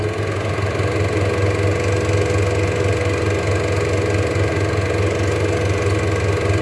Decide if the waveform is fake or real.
real